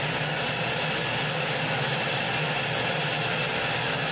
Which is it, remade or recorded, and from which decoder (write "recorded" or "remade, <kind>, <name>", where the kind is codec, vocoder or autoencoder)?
recorded